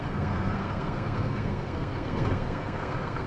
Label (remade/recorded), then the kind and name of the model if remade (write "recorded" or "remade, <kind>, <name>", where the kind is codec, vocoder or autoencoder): remade, codec, SNAC